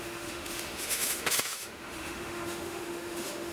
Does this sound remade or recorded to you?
remade